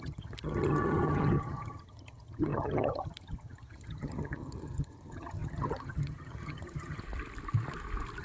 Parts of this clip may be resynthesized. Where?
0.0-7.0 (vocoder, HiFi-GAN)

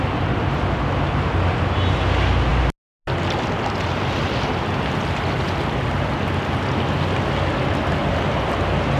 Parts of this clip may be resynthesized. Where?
none

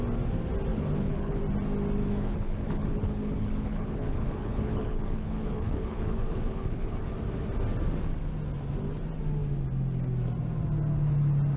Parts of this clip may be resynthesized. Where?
0.7-1.4 (codec, HILCodec); 2.0-7.1

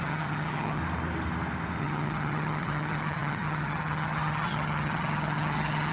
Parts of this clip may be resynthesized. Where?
0.0-0.8 (vocoder, HiFi-GAN); 1.8-5.9

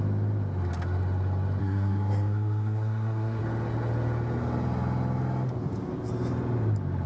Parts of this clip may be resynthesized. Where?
1.6-3.4 (codec, SNAC)

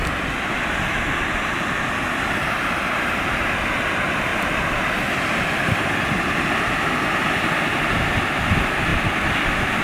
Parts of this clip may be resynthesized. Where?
4.3-6.8 (vocoder, BigVGAN v2)

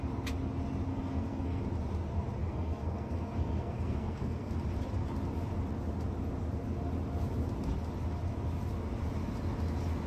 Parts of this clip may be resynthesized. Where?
0.9-1.6 (codec, SNAC); 2.4-4.5